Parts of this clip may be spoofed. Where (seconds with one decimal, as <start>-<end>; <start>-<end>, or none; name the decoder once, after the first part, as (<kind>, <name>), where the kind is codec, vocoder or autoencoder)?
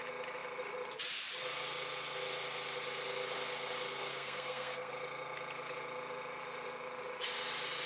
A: 4.1-4.9 (codec, SNAC)